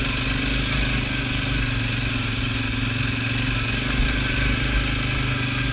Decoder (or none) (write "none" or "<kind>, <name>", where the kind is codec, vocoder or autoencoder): none